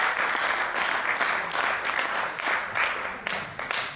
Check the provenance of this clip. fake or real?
real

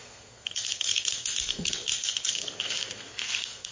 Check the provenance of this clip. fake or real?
fake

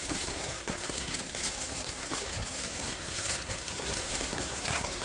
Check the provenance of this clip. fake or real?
fake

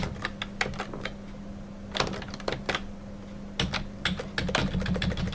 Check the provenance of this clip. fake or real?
real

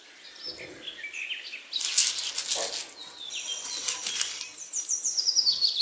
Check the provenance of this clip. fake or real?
real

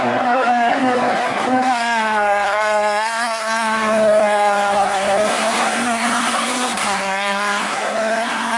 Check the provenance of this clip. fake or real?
fake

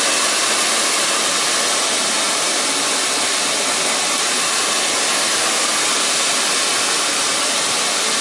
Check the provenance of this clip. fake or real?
real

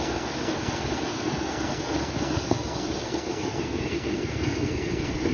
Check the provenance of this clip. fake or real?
fake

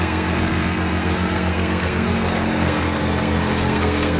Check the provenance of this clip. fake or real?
fake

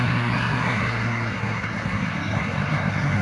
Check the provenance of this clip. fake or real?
fake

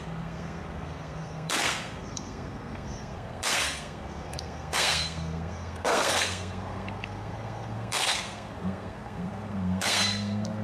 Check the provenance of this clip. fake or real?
fake